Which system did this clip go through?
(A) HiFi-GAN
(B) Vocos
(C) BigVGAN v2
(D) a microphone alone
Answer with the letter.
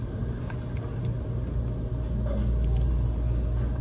D